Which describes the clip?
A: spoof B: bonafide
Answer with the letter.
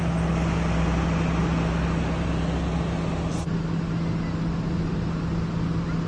B